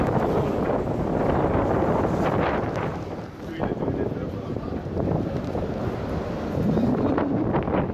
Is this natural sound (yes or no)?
yes